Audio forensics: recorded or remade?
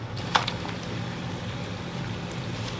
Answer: recorded